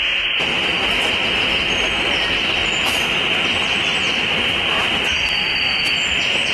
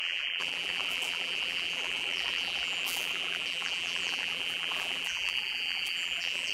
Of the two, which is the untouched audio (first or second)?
first